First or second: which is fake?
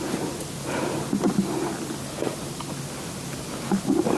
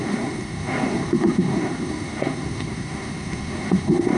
second